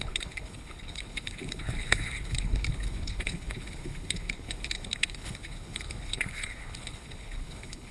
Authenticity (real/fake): fake